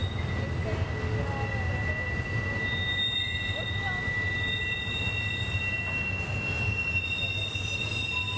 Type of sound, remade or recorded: recorded